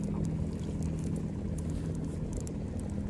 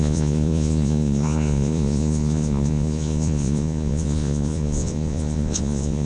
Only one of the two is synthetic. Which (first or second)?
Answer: second